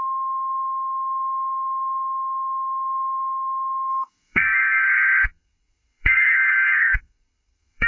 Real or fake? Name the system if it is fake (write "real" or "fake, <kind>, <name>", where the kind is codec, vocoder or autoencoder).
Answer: fake, codec, SNAC